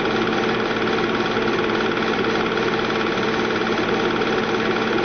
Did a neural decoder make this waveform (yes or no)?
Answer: no